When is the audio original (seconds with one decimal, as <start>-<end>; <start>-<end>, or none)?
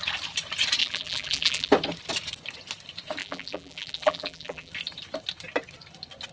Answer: 0.0-0.8; 1.7-3.2; 4.7-6.3